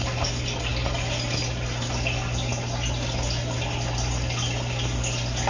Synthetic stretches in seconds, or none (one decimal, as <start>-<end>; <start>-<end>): none